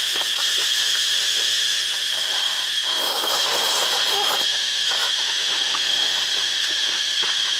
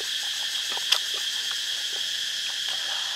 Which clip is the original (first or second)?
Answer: second